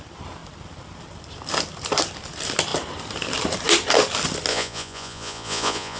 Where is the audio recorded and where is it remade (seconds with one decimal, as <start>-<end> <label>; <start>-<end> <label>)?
0.0-4.5 recorded; 4.5-6.0 remade